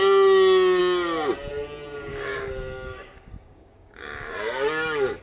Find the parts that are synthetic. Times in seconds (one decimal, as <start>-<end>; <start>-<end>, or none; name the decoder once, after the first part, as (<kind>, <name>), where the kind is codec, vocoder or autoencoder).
2.1-5.2 (codec, DAC)